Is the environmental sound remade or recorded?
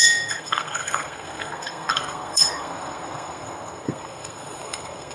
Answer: remade